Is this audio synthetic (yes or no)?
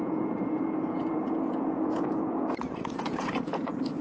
yes